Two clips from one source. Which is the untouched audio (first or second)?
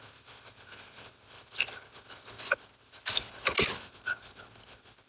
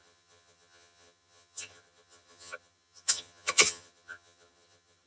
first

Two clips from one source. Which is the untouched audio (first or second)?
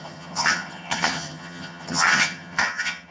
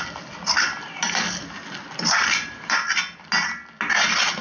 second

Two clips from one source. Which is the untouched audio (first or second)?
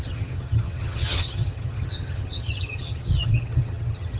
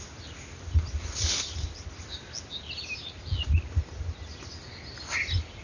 second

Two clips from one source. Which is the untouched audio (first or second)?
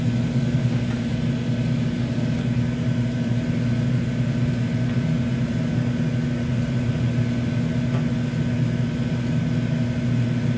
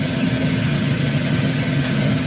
first